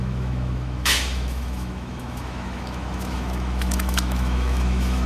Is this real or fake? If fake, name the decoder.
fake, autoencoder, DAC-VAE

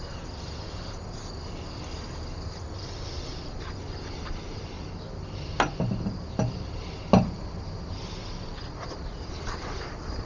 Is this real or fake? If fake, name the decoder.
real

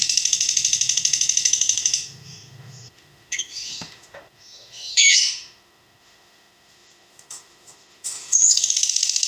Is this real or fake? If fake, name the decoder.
fake, autoencoder, DAC-VAE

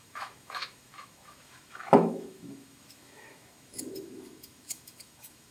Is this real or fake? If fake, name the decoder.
fake, autoencoder, DAC-VAE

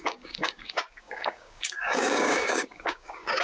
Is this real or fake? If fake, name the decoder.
fake, codec, DAC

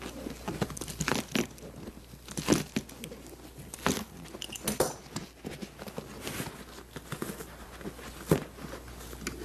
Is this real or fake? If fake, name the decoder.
real